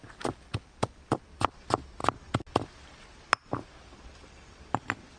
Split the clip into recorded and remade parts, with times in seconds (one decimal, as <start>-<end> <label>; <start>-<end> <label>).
0.0-5.2 recorded